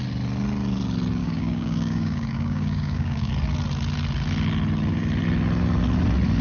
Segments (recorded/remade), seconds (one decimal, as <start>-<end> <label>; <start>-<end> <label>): 0.0-1.2 recorded; 1.2-3.3 remade; 3.3-6.4 recorded